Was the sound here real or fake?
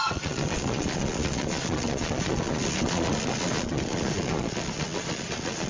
fake